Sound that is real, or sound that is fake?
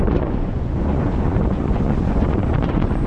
fake